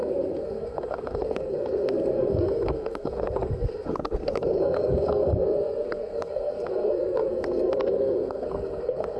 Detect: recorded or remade remade